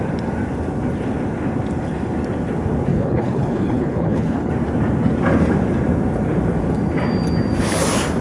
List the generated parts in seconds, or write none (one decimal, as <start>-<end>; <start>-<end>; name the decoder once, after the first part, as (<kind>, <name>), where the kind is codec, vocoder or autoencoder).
2.9-4.5 (codec, HILCodec)